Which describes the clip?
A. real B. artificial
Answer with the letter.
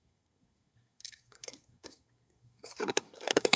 B